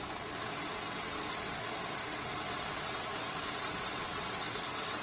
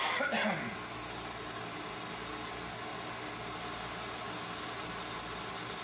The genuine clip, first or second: second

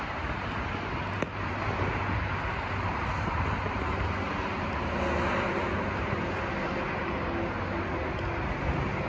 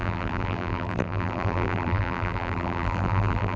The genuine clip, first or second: first